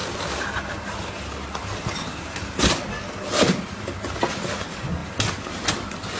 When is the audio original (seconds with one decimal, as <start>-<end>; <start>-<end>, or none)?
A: 0.0-5.0; 5.5-6.2